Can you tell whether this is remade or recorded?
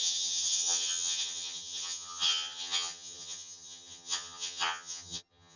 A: remade